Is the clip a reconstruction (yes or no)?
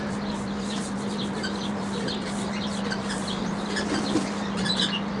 no